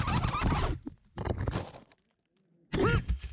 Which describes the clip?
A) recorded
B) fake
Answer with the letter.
A